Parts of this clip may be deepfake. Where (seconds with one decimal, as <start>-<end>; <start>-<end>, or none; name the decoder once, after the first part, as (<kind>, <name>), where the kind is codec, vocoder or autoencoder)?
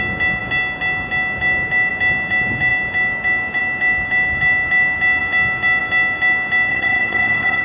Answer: 6.7-7.6 (vocoder, HiFi-GAN)